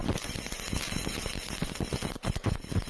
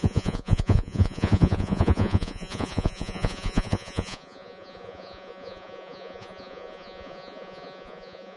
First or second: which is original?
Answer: first